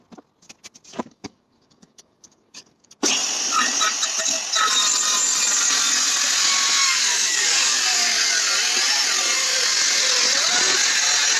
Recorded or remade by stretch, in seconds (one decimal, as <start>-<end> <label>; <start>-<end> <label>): 0.0-0.9 recorded; 0.9-3.1 remade; 3.1-6.8 recorded; 6.8-8.2 remade; 8.2-11.4 recorded